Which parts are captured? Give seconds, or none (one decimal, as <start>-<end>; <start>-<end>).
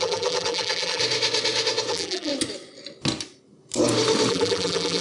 1.0-1.9; 2.3-4.3